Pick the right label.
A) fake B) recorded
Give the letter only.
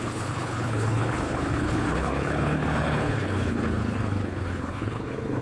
A